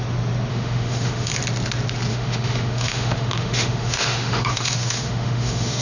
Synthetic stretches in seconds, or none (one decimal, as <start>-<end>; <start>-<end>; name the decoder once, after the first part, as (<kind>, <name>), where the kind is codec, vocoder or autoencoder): 0.5-1.3 (autoencoder, DAC-VAE); 2.1-5.8